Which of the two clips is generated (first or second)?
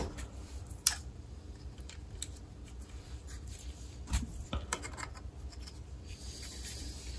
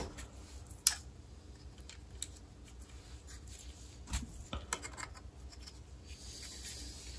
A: first